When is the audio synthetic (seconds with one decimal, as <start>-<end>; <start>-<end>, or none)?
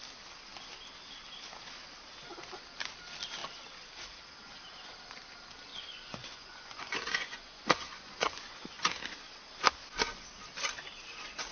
5.7-8.9